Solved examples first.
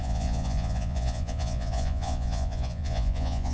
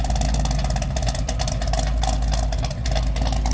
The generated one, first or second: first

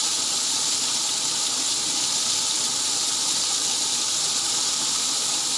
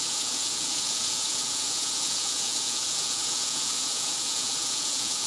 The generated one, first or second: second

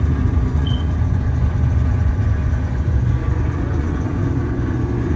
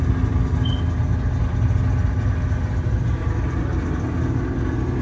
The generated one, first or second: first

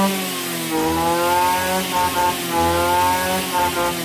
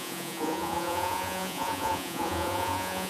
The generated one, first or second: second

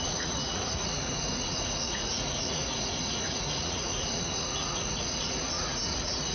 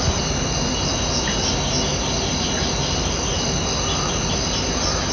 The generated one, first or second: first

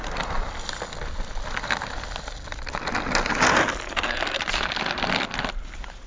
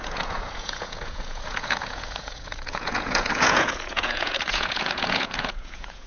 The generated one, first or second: second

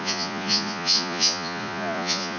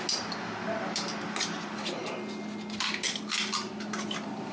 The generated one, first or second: first